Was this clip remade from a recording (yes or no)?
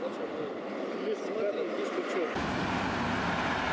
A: no